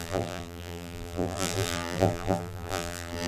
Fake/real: fake